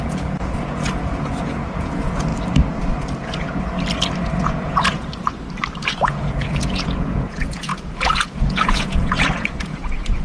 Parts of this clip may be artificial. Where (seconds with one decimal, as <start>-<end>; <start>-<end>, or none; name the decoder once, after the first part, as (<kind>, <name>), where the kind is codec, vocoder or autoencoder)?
0.0-2.3 (vocoder, Vocos); 4.4-5.1; 6.0-10.2